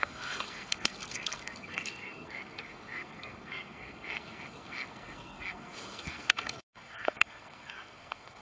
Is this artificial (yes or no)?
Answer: yes